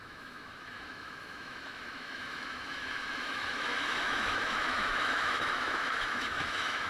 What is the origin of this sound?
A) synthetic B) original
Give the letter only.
A